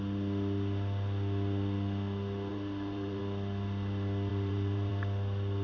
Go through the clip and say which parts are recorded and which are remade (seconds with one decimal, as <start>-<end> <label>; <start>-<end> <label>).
0.0-2.5 recorded; 2.5-3.2 remade; 3.2-4.3 recorded; 4.3-4.9 remade; 4.9-5.6 recorded